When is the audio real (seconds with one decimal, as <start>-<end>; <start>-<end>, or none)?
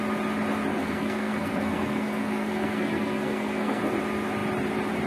0.0-0.7; 3.8-5.1